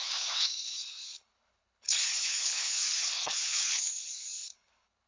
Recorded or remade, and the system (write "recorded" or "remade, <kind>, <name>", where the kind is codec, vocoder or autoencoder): remade, codec, HILCodec